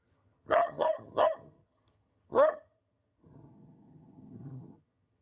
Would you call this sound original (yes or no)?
no